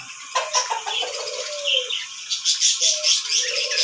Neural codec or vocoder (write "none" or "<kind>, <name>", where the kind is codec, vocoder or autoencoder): none